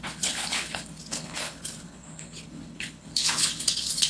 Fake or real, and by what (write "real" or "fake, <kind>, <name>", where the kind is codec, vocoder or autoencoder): fake, codec, HILCodec